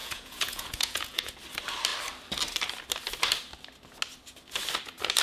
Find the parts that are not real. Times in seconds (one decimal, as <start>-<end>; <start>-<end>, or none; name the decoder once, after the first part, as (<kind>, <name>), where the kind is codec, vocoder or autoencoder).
0.0-1.3 (vocoder, Vocos)

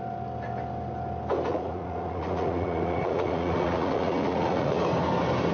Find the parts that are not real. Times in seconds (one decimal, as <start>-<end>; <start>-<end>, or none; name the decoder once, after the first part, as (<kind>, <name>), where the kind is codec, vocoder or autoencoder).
1.5-4.8 (vocoder, Vocos)

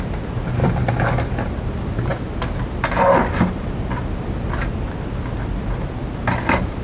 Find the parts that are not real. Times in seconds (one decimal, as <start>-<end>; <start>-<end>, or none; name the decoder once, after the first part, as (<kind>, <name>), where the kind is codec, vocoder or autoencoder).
none

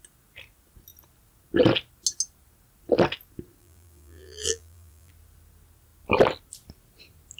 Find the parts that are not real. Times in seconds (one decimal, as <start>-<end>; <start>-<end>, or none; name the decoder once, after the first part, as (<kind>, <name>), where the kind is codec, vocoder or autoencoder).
3.6-5.1 (vocoder, BigVGAN v2)

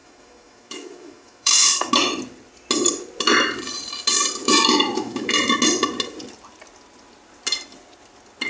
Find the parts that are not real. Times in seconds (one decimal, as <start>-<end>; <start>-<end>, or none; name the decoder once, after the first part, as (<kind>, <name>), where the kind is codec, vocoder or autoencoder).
0.0-1.9 (autoencoder, DAC-VAE); 4.4-5.3